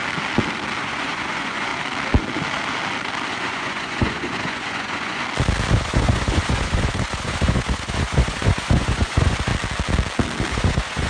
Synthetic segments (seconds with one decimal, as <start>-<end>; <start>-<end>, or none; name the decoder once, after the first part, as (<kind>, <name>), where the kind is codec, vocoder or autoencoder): 0.8-1.7 (vocoder, Vocos); 3.3-5.2; 5.7-9.5; 10.5-11.1